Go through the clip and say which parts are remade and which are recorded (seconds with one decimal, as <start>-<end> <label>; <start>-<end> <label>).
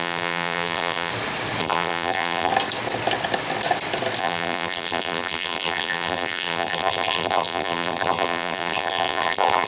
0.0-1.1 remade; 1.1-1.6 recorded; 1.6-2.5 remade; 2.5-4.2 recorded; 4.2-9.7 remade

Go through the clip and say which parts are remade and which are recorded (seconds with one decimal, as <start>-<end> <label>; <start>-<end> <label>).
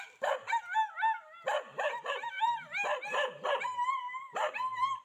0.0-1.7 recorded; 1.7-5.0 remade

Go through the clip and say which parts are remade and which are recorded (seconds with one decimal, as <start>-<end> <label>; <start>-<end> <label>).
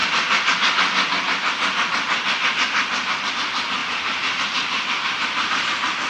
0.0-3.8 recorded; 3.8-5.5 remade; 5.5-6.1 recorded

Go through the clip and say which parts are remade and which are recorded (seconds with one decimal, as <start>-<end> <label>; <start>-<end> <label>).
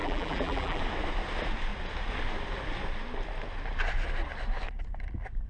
0.0-0.8 remade; 0.8-5.5 recorded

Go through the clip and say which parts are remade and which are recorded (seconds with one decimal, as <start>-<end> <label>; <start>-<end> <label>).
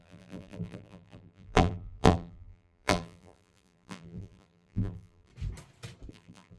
0.0-5.3 remade; 5.3-6.1 recorded; 6.1-6.6 remade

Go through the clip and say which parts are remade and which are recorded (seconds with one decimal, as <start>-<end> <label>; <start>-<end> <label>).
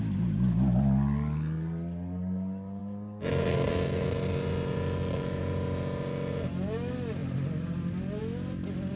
0.0-9.0 recorded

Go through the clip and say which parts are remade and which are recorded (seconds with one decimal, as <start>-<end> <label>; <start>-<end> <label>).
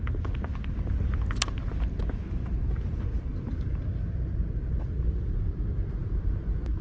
0.0-6.8 recorded